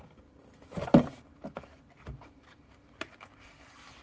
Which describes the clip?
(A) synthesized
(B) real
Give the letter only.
B